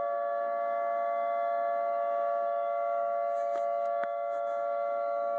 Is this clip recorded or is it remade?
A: remade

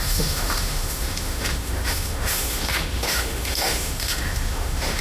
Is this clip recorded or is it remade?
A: remade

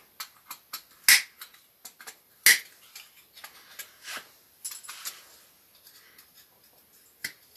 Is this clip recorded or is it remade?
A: recorded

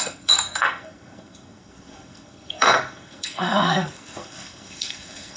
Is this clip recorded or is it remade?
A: remade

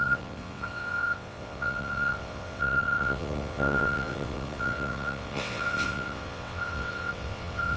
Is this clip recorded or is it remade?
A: remade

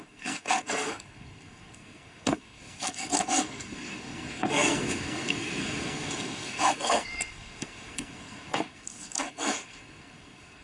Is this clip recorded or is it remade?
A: remade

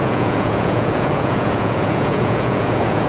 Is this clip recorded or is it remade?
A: remade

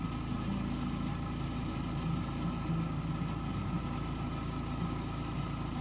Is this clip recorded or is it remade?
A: recorded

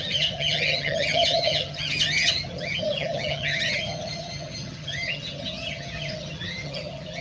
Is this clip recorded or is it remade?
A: remade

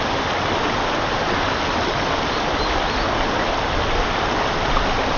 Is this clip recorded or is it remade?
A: recorded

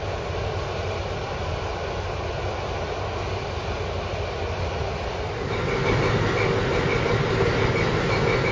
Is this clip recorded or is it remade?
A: recorded